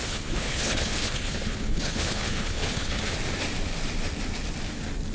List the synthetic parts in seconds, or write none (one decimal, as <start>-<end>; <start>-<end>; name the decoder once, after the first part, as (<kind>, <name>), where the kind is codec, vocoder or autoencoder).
0.0-3.0 (codec, HILCodec)